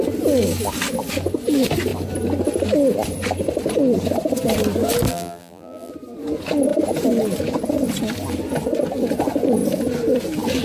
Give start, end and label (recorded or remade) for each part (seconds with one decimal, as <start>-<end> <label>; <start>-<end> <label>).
0.0-5.1 recorded; 5.1-5.9 remade; 5.9-10.6 recorded